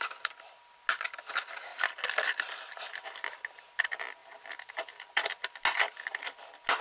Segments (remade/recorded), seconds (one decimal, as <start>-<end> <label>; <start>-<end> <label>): 0.0-4.2 recorded; 4.2-5.5 remade; 5.5-6.8 recorded

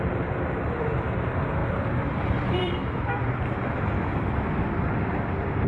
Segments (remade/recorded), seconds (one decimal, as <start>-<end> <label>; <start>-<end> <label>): 0.0-5.7 remade

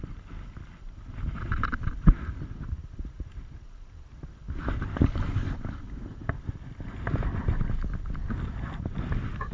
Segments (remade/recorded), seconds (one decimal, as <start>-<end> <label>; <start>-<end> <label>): 0.0-9.5 recorded